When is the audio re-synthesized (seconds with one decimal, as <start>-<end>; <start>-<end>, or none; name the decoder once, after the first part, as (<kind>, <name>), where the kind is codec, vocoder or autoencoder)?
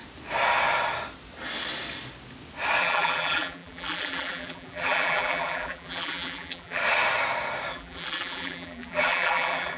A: 2.8-6.8 (vocoder, BigVGAN v2); 7.7-9.8